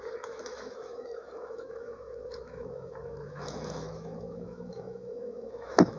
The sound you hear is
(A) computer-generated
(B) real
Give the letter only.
A